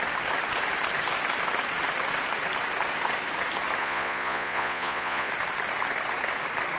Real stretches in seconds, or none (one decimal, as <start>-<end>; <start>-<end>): 0.0-3.8; 5.3-6.8